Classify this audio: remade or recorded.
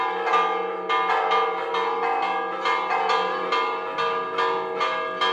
recorded